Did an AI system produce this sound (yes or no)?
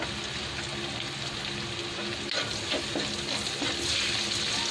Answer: no